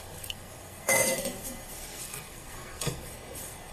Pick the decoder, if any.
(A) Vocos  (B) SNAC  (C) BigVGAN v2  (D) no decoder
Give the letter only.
B